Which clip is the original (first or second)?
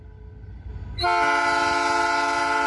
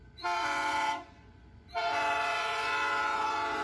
first